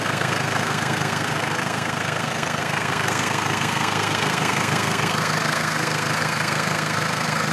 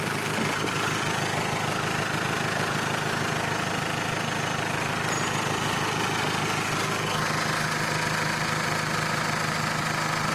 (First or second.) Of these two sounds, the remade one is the first